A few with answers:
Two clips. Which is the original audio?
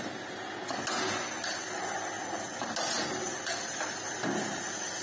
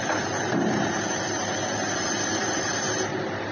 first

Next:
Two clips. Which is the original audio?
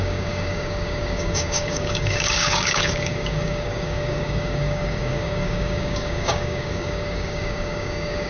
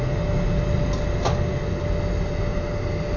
second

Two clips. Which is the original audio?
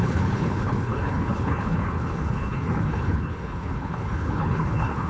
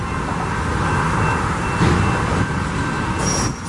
second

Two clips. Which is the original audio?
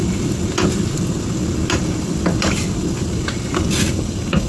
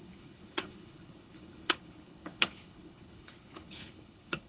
first